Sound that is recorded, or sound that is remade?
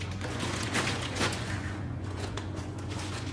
remade